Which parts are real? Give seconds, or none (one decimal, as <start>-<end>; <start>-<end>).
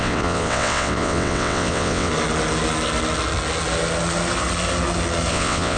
2.1-5.3